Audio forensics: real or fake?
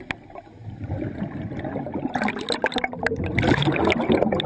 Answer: real